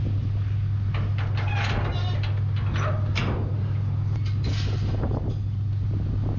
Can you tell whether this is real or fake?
real